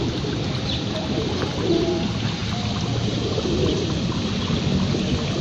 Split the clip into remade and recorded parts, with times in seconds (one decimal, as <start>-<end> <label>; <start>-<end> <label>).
0.0-5.4 recorded